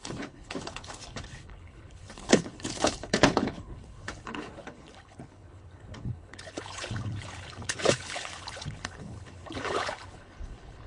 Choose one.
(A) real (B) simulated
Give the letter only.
B